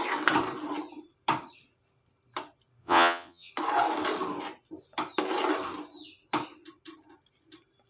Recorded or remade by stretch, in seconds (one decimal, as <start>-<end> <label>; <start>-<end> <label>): 0.0-2.8 recorded; 2.8-3.5 remade; 3.5-7.9 recorded